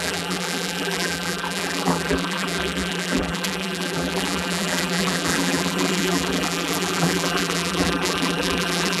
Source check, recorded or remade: remade